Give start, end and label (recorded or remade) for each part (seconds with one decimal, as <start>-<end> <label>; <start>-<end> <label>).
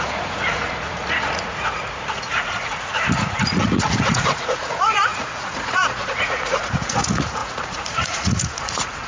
0.0-9.1 remade